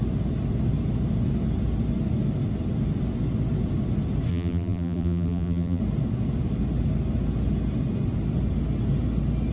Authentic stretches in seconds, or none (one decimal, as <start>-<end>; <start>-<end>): 0.0-4.3; 5.8-9.5